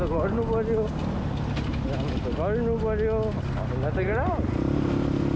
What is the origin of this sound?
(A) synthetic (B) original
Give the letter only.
B